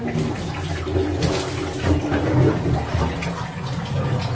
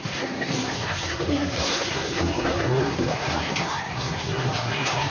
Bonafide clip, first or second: first